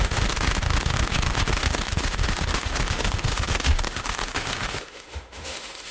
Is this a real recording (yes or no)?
no